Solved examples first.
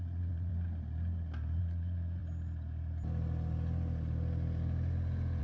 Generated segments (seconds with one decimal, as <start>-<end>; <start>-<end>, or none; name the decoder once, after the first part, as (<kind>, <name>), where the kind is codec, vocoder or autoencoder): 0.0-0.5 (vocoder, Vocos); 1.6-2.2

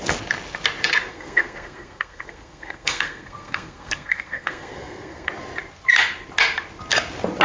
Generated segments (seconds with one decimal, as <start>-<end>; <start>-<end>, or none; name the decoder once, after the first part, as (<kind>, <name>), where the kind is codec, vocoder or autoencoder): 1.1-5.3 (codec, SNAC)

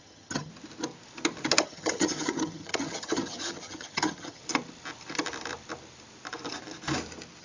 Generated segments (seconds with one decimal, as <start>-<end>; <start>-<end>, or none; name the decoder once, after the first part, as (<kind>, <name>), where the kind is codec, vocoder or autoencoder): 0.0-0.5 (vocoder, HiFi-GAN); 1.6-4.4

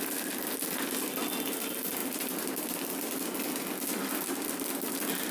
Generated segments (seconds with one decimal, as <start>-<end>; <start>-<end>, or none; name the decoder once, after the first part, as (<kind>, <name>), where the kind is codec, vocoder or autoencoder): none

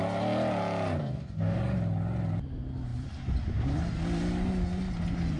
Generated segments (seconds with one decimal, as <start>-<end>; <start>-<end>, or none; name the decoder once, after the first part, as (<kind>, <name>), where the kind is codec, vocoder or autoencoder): 1.0-1.6 (codec, DAC)

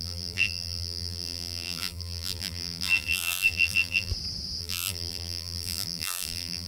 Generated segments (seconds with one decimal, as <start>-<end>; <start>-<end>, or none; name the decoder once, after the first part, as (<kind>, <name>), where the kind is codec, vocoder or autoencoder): 0.0-4.1 (vocoder, BigVGAN v2); 4.6-6.7

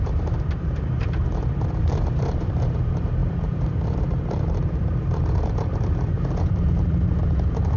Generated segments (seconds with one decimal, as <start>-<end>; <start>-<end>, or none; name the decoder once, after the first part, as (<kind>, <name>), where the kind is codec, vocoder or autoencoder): 0.0-7.8 (vocoder, BigVGAN v2)

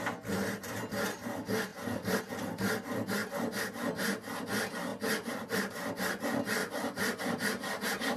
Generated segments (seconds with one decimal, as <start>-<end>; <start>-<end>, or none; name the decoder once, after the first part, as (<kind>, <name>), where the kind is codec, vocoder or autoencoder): 1.7-2.2 (vocoder, BigVGAN v2); 4.9-5.9; 6.6-7.2